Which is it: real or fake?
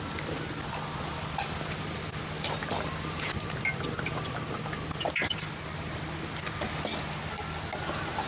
real